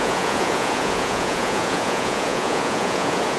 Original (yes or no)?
no